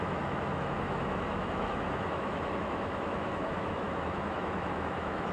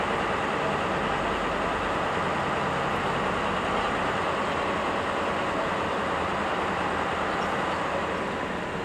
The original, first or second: second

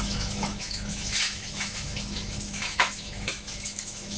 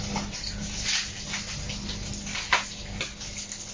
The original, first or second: second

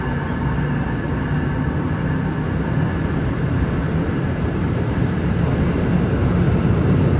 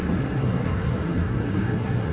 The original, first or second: first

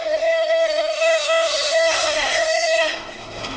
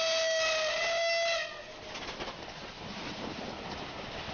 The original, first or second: second